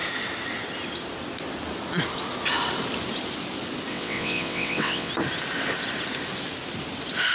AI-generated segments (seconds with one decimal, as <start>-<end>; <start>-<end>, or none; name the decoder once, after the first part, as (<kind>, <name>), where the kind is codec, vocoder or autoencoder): 3.9-5.1 (vocoder, WaveNeXt)